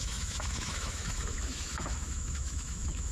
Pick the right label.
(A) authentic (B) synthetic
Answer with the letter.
B